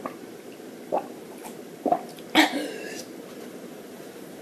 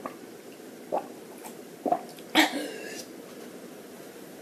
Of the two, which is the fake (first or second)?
first